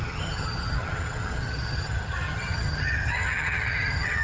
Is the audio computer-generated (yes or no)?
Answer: yes